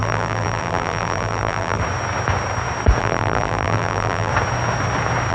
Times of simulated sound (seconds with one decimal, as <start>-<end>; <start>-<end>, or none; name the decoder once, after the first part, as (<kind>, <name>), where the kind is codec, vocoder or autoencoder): 0.0-1.8 (vocoder, BigVGAN v2); 3.0-4.3